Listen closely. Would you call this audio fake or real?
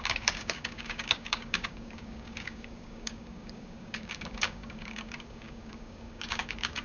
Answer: fake